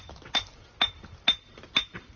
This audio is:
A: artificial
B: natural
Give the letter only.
B